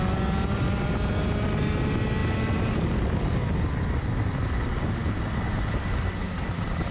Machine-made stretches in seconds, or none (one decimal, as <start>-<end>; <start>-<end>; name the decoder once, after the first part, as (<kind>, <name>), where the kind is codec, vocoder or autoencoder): none